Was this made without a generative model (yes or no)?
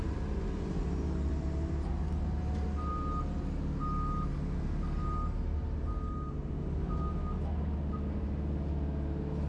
yes